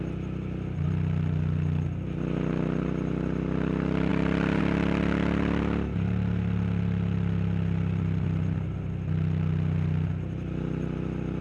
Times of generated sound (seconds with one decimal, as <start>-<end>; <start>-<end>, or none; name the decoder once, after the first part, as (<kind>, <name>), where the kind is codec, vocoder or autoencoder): none